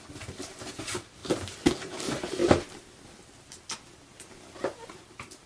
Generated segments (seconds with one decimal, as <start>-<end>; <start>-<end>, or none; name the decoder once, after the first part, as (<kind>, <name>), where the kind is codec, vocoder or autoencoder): 0.0-1.2 (vocoder, BigVGAN v2); 1.8-2.4; 4.9-5.5